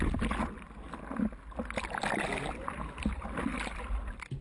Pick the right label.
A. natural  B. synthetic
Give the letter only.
B